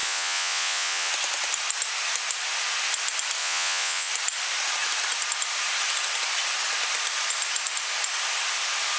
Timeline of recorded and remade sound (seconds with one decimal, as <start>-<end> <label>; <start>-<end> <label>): 0.0-1.1 remade; 1.1-3.4 recorded; 3.4-4.1 remade; 4.1-9.0 recorded